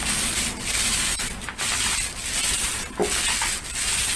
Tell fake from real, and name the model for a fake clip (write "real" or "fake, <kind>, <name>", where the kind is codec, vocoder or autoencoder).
real